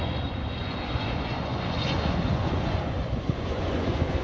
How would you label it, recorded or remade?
remade